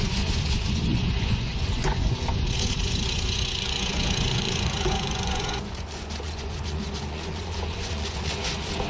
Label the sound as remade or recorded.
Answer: remade